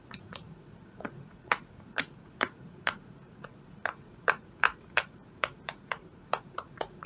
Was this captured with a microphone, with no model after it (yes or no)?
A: no